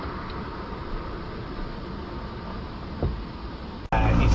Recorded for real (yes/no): yes